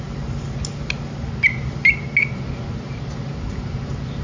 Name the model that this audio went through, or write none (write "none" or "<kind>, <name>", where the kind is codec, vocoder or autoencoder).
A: none